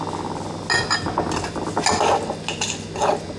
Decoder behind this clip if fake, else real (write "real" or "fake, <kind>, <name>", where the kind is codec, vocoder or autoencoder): real